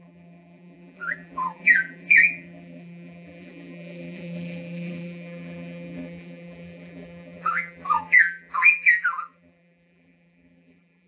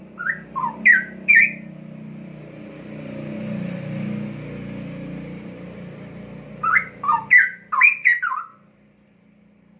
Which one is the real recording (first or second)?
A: second